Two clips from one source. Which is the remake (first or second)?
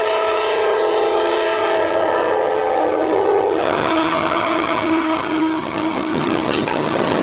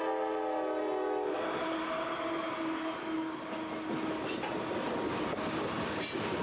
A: first